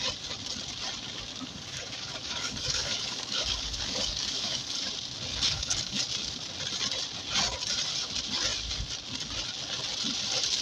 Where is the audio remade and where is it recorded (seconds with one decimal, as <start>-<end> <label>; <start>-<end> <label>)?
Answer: 0.0-1.3 recorded; 1.3-4.8 remade; 4.8-5.3 recorded; 5.3-6.0 remade; 6.0-10.6 recorded

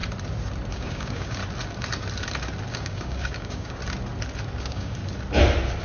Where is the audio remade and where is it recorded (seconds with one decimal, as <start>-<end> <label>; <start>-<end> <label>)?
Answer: 0.0-0.7 recorded; 0.7-1.4 remade; 1.4-2.7 recorded; 2.7-3.8 remade; 3.8-4.6 recorded; 4.6-5.0 remade; 5.0-5.8 recorded

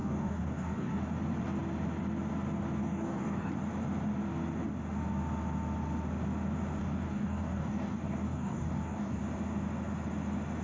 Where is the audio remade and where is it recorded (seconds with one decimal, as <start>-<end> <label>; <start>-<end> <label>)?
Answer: 0.0-1.0 remade; 1.0-2.8 recorded; 2.8-3.5 remade; 3.5-6.8 recorded; 6.8-9.2 remade; 9.2-10.6 recorded